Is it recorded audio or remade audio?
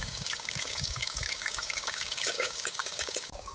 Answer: remade